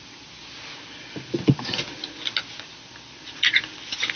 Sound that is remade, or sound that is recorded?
recorded